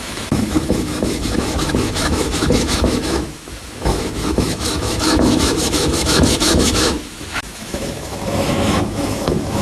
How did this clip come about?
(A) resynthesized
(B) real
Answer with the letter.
A